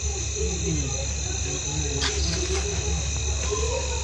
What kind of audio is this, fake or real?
real